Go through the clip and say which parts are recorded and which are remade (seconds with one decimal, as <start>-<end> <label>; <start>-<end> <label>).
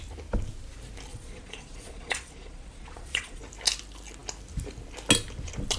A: 0.0-1.1 recorded; 1.1-3.4 remade; 3.4-5.8 recorded